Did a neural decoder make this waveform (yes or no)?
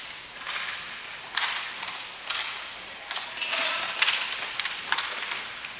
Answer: no